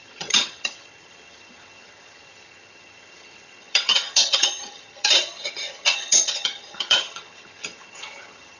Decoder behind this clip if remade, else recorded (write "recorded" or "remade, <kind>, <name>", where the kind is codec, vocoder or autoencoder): remade, vocoder, HiFi-GAN